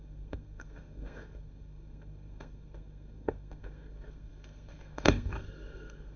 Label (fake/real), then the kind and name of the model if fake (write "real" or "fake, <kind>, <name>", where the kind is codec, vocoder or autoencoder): fake, codec, SNAC